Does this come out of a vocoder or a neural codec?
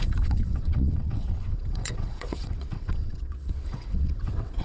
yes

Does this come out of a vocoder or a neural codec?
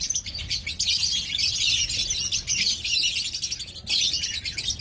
no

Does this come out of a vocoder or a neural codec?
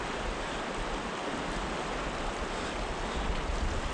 no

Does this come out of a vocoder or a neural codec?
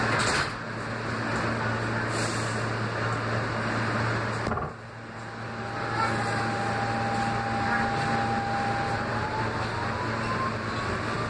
no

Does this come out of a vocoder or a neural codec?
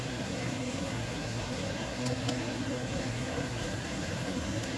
yes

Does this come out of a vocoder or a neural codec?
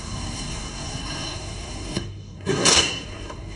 yes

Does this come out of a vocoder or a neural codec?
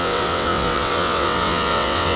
yes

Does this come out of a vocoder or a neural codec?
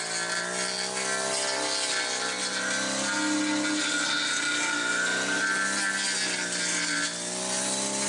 no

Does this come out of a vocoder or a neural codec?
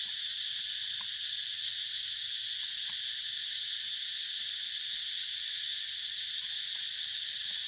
no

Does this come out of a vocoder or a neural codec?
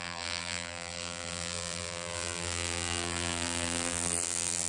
yes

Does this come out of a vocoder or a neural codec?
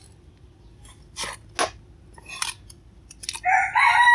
no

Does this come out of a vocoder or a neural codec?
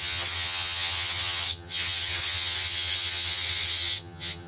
yes